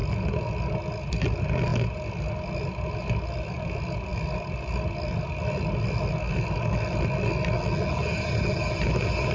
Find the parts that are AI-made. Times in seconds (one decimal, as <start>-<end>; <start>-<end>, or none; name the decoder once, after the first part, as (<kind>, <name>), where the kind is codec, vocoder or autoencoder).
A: none